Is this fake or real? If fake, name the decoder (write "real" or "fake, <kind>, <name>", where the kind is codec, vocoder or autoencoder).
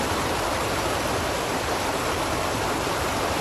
real